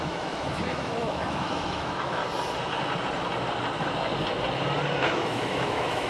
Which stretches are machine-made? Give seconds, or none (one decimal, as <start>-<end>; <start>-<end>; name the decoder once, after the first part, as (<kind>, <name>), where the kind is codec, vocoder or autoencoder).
0.0-2.2 (autoencoder, DAC-VAE); 5.0-6.1

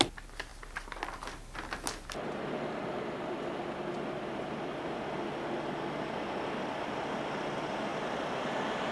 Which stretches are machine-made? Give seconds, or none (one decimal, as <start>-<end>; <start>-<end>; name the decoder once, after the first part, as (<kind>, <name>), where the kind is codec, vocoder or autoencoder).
7.9-8.4 (vocoder, BigVGAN v2)

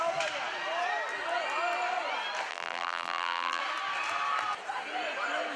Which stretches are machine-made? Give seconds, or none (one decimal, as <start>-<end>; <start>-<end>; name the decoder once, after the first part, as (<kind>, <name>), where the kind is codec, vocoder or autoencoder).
2.5-3.6 (vocoder, BigVGAN v2)